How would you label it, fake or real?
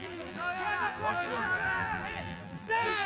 fake